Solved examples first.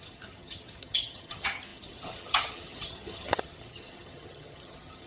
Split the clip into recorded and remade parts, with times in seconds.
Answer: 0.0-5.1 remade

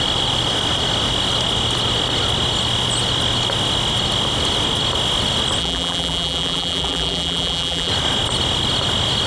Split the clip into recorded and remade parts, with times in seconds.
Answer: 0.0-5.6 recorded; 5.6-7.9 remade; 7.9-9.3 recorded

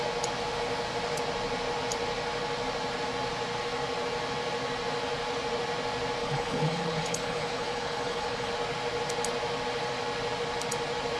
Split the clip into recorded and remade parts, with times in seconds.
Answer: 0.0-6.2 recorded; 6.2-8.5 remade; 8.5-11.2 recorded

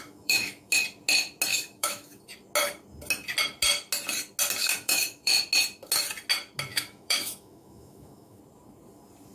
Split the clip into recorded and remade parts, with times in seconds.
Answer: 0.0-0.7 remade; 0.7-1.5 recorded; 1.5-2.2 remade; 2.2-4.6 recorded; 4.6-5.4 remade; 5.4-6.7 recorded; 6.7-8.4 remade; 8.4-9.3 recorded

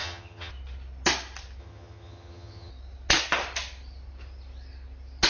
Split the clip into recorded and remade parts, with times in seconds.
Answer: 0.0-0.5 remade; 0.5-1.6 recorded; 1.6-2.7 remade; 2.7-5.3 recorded